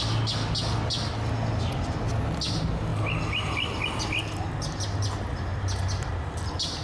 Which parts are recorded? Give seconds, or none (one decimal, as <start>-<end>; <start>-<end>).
0.0-6.8